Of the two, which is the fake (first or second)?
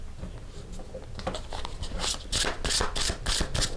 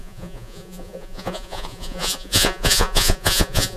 second